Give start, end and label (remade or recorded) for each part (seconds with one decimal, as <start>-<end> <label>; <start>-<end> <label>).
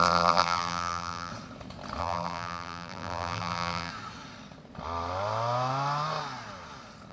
0.0-1.3 remade; 1.3-2.0 recorded; 2.0-3.9 remade; 3.9-7.1 recorded